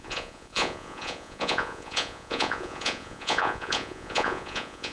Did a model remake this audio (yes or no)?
yes